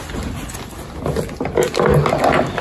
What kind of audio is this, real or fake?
real